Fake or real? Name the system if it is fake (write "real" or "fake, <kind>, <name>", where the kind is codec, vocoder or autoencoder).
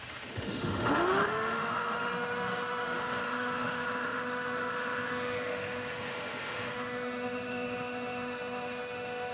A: fake, autoencoder, DAC-VAE